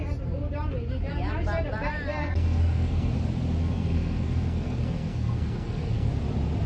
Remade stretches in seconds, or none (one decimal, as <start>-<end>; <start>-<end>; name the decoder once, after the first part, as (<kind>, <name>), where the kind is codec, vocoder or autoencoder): 2.2-3.1 (codec, SNAC); 3.6-6.1